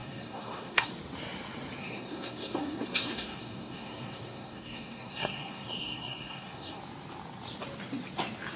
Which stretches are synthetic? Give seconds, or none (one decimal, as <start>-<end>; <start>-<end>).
0.0-0.9; 1.8-6.8